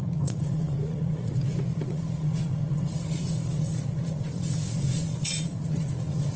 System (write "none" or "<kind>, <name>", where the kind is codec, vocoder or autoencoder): vocoder, Vocos